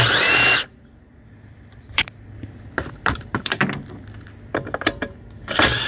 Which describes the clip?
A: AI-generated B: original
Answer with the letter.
A